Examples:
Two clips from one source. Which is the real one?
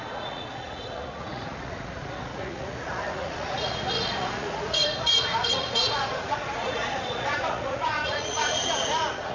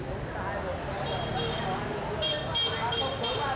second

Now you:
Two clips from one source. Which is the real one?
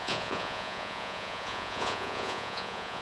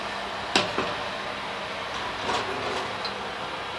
second